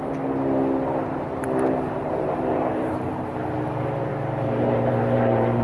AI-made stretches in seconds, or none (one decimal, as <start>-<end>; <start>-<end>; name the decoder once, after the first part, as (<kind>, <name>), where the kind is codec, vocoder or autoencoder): 1.0-3.1 (vocoder, BigVGAN v2); 4.1-5.6